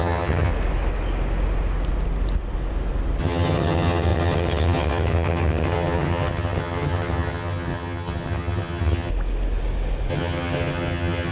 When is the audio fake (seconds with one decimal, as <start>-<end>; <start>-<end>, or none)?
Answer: 0.0-0.5; 3.2-9.1; 10.1-11.3